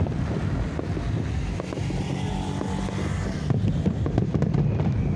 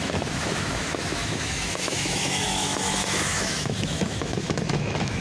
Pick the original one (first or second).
first